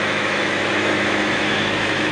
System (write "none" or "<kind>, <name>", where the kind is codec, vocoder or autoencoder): autoencoder, DAC-VAE